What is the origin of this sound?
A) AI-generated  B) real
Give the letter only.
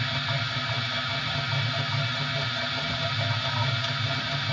B